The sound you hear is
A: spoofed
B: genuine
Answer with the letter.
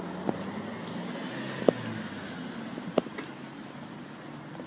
B